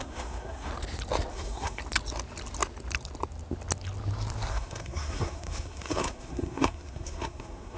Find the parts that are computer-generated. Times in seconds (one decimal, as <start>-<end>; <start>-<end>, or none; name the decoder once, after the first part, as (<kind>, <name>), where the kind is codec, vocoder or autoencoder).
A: 0.0-0.7 (codec, SNAC); 1.3-1.8; 4.5-7.8